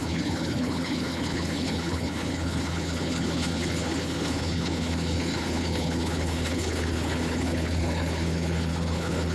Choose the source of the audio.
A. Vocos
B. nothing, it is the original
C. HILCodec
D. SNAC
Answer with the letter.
C